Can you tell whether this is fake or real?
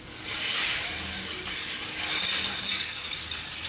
fake